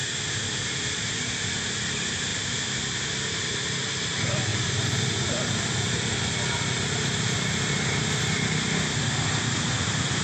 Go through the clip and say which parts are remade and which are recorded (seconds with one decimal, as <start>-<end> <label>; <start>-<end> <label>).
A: 0.0-2.3 recorded; 2.3-2.8 remade; 2.8-4.5 recorded; 4.5-6.2 remade; 6.2-10.2 recorded